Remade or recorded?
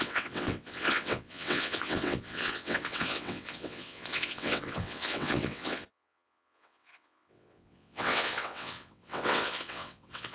remade